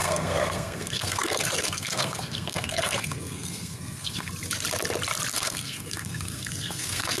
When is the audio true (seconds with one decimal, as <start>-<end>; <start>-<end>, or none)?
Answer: 4.3-5.3